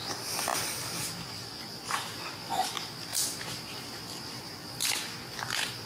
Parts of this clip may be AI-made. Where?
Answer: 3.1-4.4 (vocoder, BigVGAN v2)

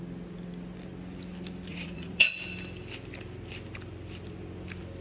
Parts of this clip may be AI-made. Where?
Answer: 1.7-2.3 (vocoder, Vocos)